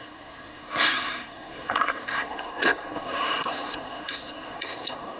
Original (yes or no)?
no